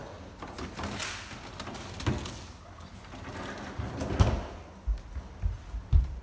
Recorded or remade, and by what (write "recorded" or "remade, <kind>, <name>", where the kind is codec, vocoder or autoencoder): recorded